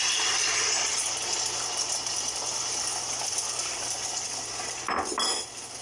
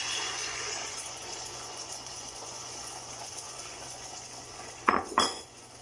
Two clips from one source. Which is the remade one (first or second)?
second